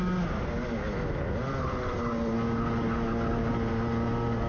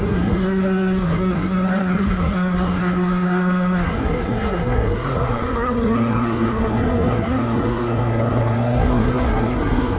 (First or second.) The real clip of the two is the first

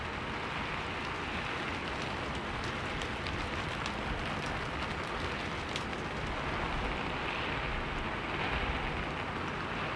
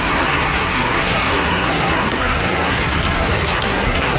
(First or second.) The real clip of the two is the first